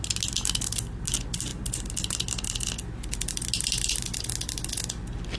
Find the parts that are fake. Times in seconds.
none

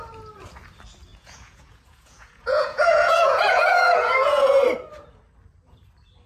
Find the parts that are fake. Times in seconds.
1.1-4.6

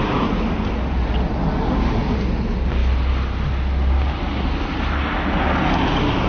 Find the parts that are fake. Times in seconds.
none

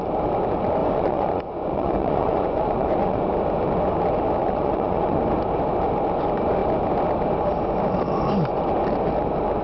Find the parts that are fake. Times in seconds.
0.8-3.3; 4.4-5.2